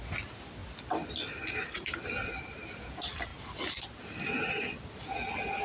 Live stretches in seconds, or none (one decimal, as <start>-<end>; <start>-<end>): 0.0-5.6